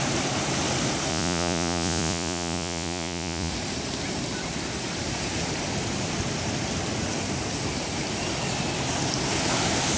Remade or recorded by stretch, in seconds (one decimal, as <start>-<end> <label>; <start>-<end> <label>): 0.0-1.1 recorded; 1.1-3.5 remade; 3.5-10.0 recorded